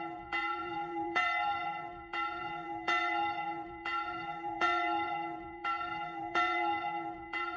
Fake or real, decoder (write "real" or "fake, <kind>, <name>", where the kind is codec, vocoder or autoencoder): fake, vocoder, Vocos